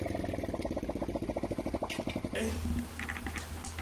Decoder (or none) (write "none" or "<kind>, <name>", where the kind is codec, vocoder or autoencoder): none